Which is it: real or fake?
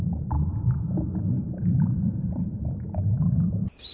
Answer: real